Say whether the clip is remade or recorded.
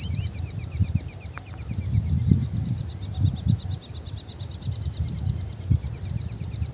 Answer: recorded